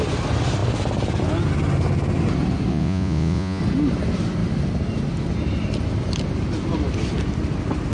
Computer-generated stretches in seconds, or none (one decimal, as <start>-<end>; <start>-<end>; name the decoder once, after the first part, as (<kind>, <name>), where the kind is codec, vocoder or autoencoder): 2.7-3.6 (vocoder, Vocos)